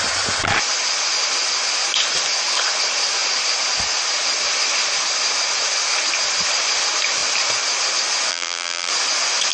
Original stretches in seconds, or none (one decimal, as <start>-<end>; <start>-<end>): 0.0-8.3; 8.9-9.5